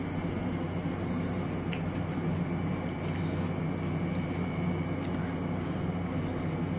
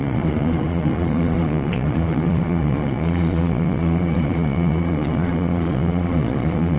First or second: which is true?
first